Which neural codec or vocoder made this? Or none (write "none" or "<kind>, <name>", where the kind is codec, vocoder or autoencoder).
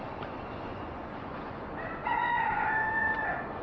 vocoder, Vocos